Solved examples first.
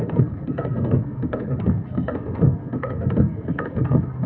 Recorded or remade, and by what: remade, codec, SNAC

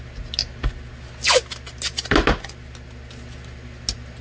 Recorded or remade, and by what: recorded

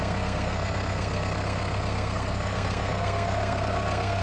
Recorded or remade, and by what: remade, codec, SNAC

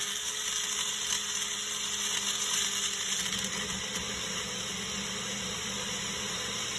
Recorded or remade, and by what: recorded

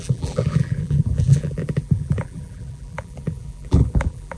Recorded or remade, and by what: remade, vocoder, BigVGAN v2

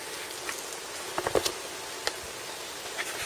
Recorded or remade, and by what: recorded